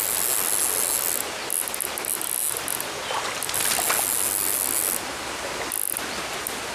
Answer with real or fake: real